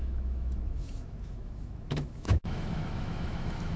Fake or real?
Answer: fake